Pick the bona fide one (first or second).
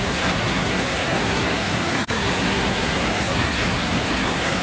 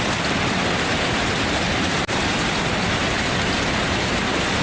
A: second